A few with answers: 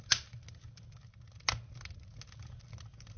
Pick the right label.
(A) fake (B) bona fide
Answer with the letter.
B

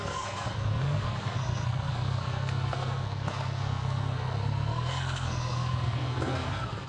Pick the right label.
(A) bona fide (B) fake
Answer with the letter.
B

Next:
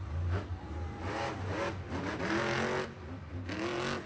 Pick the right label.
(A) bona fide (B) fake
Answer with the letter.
A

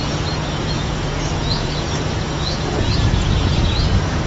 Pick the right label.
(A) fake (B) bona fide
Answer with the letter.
A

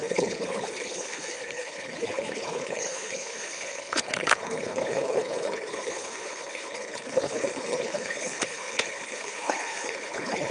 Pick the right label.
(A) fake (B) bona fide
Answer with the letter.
A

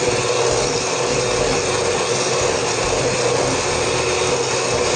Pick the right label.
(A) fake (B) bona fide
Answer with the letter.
B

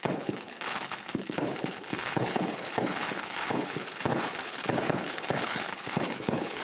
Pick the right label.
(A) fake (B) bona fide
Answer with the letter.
A